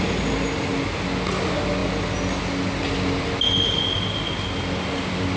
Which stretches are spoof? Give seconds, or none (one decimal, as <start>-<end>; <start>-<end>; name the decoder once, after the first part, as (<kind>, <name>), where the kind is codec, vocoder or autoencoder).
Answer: none